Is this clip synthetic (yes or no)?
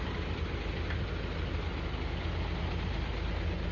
no